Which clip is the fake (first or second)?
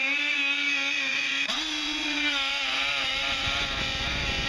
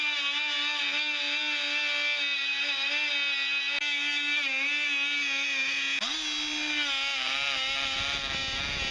first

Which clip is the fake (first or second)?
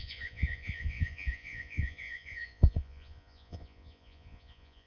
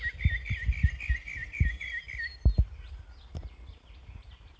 first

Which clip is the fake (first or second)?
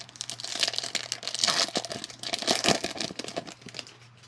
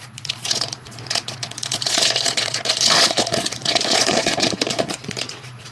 second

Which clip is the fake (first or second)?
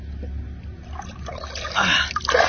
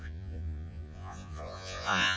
second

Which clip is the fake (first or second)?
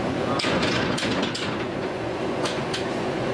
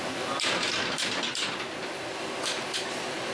first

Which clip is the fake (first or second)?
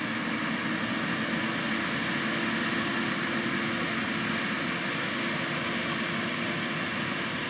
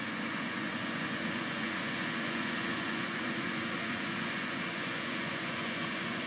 second